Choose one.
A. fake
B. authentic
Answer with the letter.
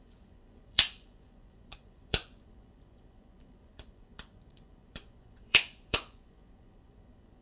A